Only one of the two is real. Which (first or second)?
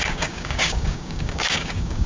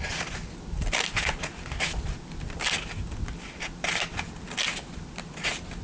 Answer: second